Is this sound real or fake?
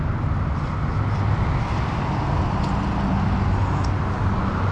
real